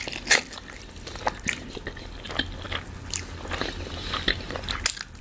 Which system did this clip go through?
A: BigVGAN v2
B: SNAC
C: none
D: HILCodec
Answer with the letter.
C